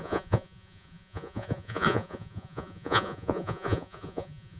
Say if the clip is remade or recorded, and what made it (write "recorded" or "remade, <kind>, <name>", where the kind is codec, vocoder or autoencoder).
remade, vocoder, Vocos